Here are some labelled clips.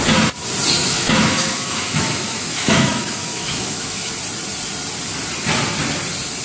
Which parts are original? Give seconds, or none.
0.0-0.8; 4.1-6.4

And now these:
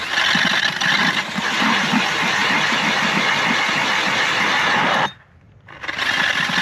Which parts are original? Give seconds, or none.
0.0-6.6

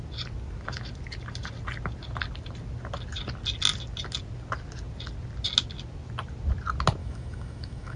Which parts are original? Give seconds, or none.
0.0-7.0

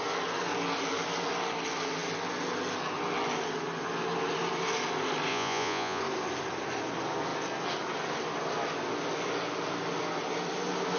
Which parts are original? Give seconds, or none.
0.0-5.3; 6.0-11.0

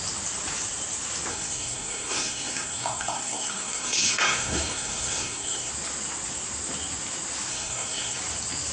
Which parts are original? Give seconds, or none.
0.0-1.3; 5.7-7.5; 8.2-8.7

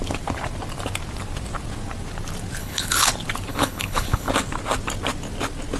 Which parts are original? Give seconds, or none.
0.0-2.6; 3.1-3.5; 4.3-5.8